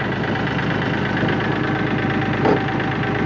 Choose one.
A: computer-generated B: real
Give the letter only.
B